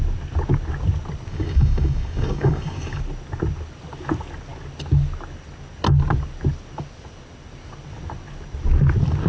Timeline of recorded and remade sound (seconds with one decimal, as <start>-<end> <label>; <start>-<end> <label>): 0.0-1.3 recorded; 1.3-3.0 remade; 3.0-9.3 recorded